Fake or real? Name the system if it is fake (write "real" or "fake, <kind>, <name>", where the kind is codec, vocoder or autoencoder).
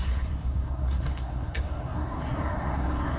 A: fake, codec, SNAC